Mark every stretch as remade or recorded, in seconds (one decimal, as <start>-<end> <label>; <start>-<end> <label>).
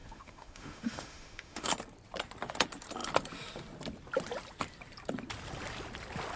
0.0-1.7 remade; 1.7-6.4 recorded